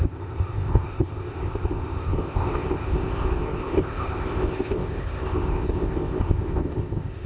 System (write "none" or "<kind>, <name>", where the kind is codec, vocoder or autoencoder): codec, ZipCodec